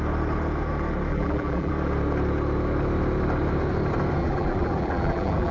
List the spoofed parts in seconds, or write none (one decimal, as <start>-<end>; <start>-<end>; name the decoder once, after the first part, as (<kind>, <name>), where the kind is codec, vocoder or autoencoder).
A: 1.1-1.7 (vocoder, BigVGAN v2); 4.2-5.5